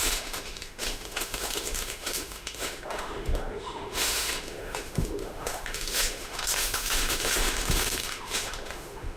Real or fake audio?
fake